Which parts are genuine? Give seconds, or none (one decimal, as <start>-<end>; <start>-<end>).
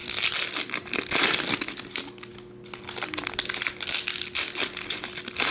0.0-5.5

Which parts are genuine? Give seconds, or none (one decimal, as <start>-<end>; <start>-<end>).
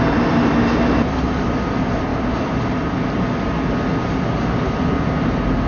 0.0-5.7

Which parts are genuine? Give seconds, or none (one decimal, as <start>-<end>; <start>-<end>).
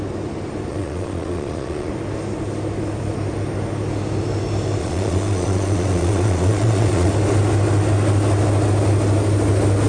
0.0-0.7; 1.9-4.8; 7.1-9.9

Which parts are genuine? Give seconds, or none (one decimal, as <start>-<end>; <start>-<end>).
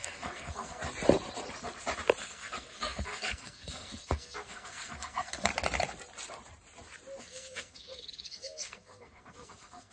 0.8-2.2; 5.5-7.2